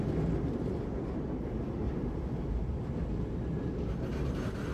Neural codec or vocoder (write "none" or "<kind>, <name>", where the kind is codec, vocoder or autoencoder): none